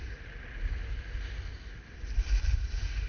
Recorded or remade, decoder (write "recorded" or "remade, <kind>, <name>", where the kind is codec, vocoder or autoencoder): recorded